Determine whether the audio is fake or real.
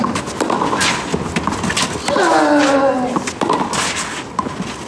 real